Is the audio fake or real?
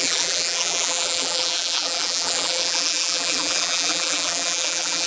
fake